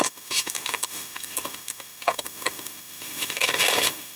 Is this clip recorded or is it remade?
remade